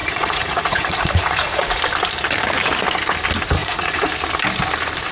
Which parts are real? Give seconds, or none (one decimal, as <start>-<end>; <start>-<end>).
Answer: 1.8-3.6; 4.1-5.1